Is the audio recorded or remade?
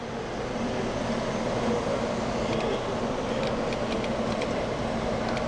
recorded